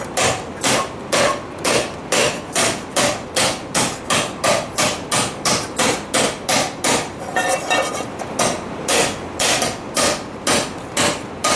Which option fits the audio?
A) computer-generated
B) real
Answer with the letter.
B